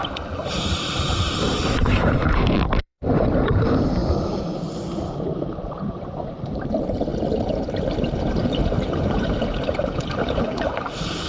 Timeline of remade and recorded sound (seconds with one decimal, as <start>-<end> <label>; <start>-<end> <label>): 0.0-7.1 remade; 7.1-8.3 recorded; 8.3-11.3 remade